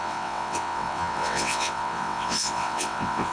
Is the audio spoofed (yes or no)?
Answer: yes